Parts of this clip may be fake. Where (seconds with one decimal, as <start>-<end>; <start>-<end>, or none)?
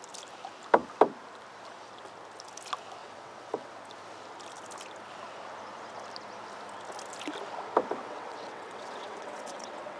3.0-3.7; 8.0-10.0